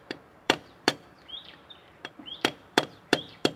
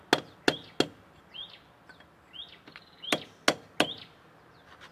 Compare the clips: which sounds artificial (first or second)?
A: first